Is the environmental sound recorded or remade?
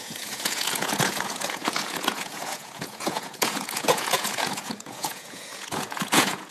remade